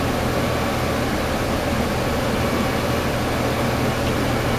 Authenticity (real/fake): real